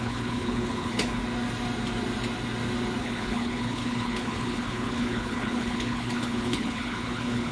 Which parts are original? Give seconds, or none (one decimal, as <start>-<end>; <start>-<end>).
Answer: 1.2-3.0